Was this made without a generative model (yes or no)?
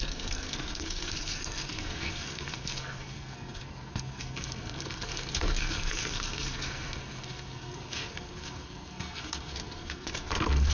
no